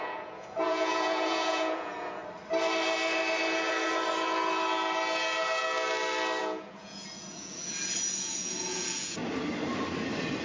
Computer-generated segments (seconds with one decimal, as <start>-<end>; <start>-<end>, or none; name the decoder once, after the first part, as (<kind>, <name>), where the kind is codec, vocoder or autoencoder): 0.0-2.2 (vocoder, Vocos); 6.4-9.2